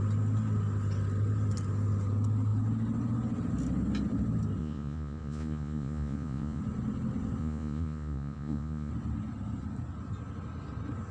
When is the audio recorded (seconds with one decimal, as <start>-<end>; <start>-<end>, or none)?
0.0-4.6; 6.6-7.4; 8.9-11.1